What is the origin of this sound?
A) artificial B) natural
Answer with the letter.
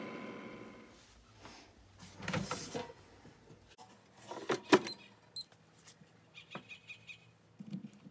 B